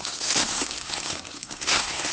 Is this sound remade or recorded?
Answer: remade